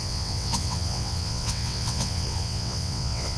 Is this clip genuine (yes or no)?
no